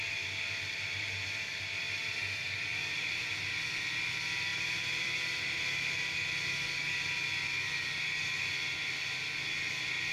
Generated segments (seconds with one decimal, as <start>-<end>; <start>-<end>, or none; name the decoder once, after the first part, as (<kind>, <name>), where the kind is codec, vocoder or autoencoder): 2.7-3.3 (vocoder, BigVGAN v2); 4.5-5.2